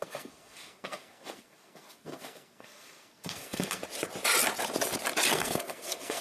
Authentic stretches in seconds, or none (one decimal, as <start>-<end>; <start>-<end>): 3.8-5.3